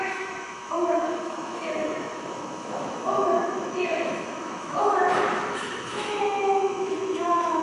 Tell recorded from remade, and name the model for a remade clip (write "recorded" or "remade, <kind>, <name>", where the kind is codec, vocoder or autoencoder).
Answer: remade, autoencoder, DAC-VAE